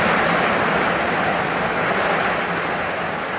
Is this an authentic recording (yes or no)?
yes